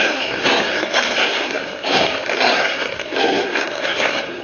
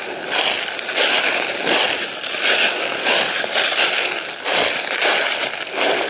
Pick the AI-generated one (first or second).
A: first